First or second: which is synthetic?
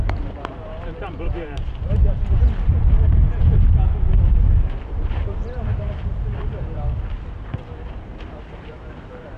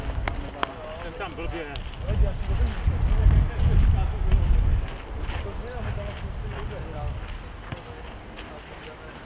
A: first